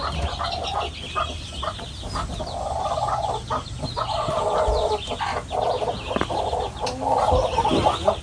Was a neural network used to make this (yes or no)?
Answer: no